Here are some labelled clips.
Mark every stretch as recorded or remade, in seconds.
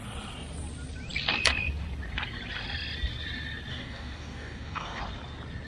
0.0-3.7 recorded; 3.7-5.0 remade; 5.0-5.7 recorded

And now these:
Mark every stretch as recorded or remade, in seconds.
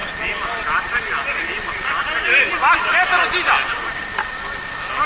0.0-5.1 recorded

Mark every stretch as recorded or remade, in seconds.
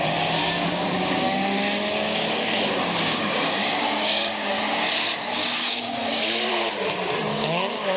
0.0-0.4 recorded; 0.4-4.6 remade; 4.6-5.4 recorded; 5.4-6.5 remade; 6.5-7.3 recorded; 7.3-8.0 remade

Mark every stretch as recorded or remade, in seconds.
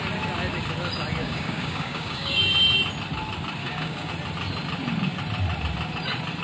0.0-1.2 recorded; 1.2-2.4 remade; 2.4-3.6 recorded; 3.6-4.1 remade; 4.1-6.4 recorded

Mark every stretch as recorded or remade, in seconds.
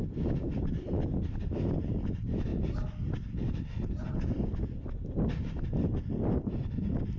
0.0-7.2 recorded